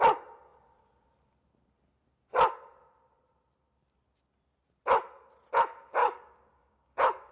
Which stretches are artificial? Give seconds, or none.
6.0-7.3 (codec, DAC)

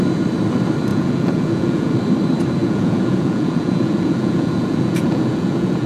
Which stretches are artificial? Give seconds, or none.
0.9-1.9 (vocoder, Vocos); 2.6-5.9

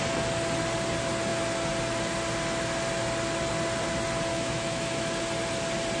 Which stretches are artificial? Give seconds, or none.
4.3-5.1 (autoencoder, DAC-VAE)

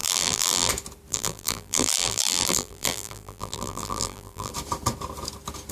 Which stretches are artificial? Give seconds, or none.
0.0-0.7 (vocoder, BigVGAN v2); 1.1-4.5

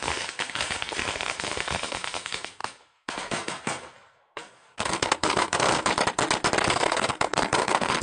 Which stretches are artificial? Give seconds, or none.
0.0-5.9 (codec, SNAC); 6.7-8.0

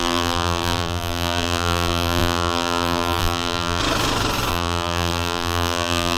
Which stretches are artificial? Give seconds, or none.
0.0-3.8 (vocoder, BigVGAN v2); 4.5-6.2

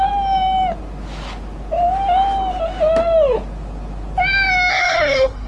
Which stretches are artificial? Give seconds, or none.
4.7-5.5 (codec, SNAC)

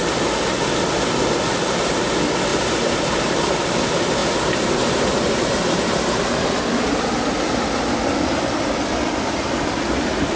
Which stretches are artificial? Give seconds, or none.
2.5-3.7 (vocoder, BigVGAN v2); 4.2-6.5